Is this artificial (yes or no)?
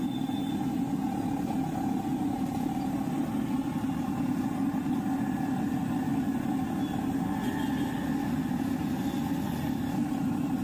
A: no